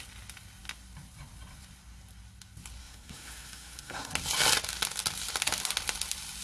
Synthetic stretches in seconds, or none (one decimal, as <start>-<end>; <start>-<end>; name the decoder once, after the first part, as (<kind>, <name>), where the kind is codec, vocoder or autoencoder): 2.8-4.1 (codec, SNAC)